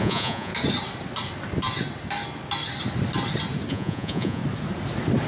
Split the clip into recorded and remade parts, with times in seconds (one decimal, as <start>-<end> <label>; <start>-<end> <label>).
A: 0.0-0.5 remade; 0.5-3.7 recorded; 3.7-4.4 remade; 4.4-5.3 recorded